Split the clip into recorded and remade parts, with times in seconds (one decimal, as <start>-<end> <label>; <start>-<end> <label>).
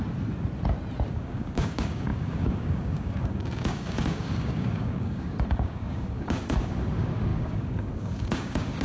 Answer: 0.0-1.1 recorded; 1.1-8.8 remade